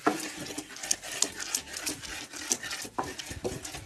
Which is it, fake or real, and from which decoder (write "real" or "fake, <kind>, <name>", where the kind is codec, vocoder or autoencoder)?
real